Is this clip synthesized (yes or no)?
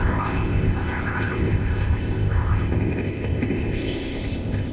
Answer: yes